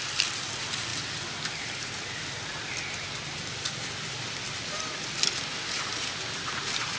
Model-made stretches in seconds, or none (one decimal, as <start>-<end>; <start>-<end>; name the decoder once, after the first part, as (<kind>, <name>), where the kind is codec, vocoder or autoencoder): none